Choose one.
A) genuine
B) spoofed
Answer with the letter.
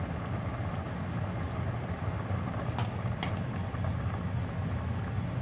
A